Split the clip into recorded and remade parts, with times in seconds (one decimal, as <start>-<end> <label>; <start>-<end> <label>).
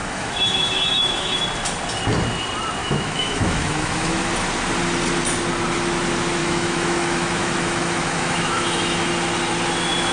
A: 0.0-1.4 remade; 1.4-2.8 recorded; 2.8-4.3 remade; 4.3-6.4 recorded; 6.4-9.1 remade; 9.1-10.1 recorded